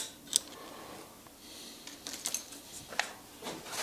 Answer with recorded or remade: recorded